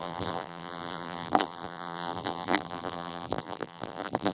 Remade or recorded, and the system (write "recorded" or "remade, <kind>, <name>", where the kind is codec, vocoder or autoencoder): remade, vocoder, BigVGAN v2